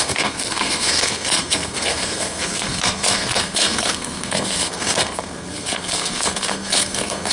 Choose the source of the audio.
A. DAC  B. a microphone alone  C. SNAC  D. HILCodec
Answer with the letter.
C